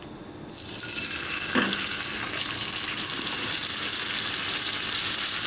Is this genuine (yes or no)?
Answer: yes